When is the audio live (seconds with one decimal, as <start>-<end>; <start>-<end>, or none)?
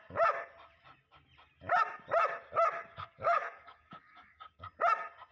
0.0-2.9; 4.6-5.3